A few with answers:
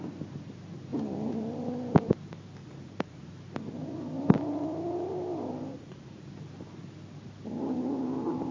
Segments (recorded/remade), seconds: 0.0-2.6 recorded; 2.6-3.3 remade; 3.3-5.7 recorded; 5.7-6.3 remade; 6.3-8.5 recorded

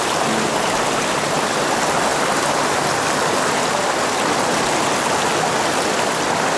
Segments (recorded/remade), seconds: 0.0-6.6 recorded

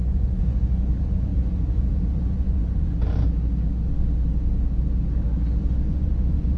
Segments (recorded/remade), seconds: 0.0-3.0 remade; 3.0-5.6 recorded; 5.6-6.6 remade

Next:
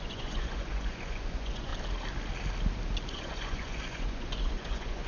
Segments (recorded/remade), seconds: 0.0-1.7 remade; 1.7-3.1 recorded; 3.1-5.1 remade

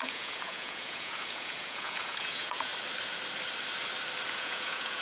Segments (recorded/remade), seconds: 0.0-2.7 remade; 2.7-4.3 recorded; 4.3-5.0 remade